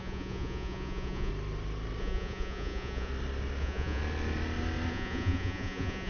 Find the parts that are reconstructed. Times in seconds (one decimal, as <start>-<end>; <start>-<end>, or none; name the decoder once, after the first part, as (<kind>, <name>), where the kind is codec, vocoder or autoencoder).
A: 0.0-1.3 (vocoder, Vocos); 2.0-3.1; 3.6-4.0; 4.9-6.1